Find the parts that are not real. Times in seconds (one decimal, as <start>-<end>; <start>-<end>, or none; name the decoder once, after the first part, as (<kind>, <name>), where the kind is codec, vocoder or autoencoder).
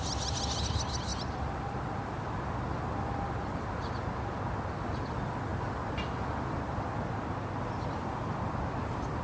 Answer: none